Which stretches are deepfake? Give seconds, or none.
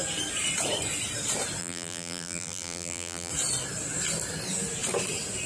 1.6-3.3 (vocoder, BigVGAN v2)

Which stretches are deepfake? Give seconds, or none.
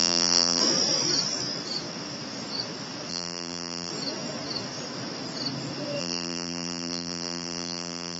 0.0-0.6 (vocoder, BigVGAN v2); 3.1-3.9; 6.0-8.2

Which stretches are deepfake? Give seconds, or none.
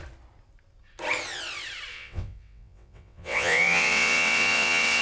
1.9-5.0 (vocoder, WaveNeXt)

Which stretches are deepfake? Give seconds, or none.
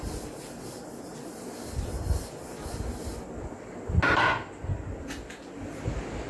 none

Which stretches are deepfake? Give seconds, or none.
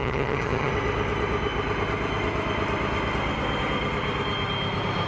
0.0-0.7 (vocoder, HiFi-GAN)